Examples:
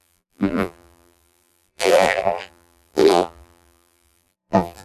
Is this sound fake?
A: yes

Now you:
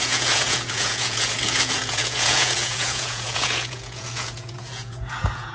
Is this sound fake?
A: yes